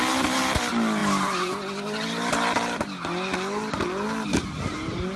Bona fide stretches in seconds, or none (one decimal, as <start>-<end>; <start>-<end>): 0.0-5.2